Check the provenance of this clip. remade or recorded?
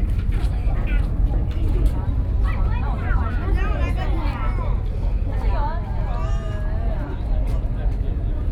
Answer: recorded